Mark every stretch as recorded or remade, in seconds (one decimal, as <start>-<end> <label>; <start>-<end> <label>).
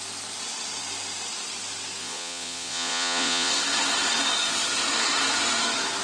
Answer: 0.0-2.0 recorded; 2.0-3.5 remade; 3.5-6.0 recorded